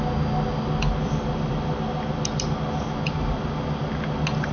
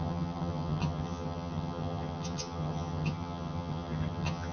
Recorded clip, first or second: first